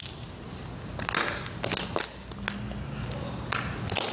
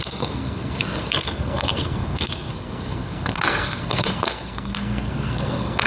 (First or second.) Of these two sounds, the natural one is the first